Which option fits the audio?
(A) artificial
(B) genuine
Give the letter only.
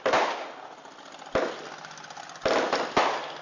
B